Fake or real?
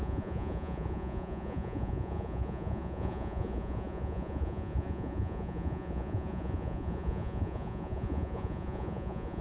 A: fake